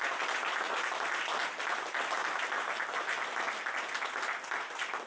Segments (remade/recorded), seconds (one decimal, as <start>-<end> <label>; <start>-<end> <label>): 0.0-5.1 recorded